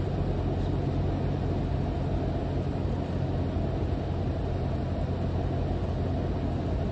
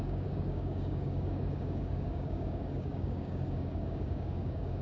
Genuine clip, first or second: first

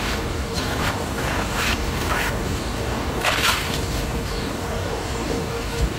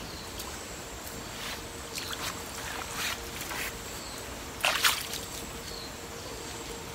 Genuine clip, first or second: second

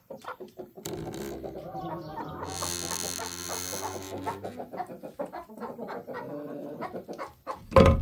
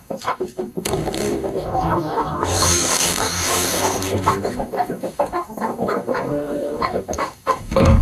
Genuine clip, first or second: first